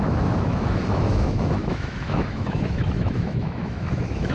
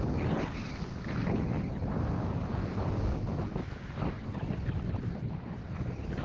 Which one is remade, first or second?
first